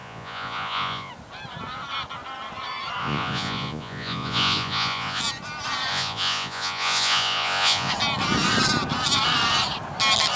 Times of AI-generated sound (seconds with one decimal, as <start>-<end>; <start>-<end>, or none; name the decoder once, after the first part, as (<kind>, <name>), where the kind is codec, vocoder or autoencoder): 0.0-1.1 (vocoder, Vocos); 3.0-5.2; 5.9-7.9